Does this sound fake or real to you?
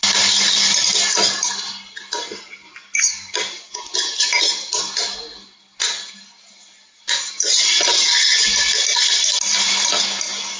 real